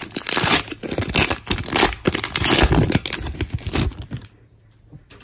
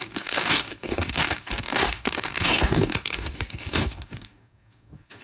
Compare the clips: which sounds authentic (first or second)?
first